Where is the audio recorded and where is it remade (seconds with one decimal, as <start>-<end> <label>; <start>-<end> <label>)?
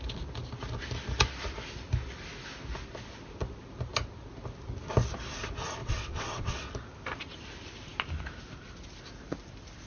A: 0.0-5.8 recorded; 5.8-6.6 remade; 6.6-9.9 recorded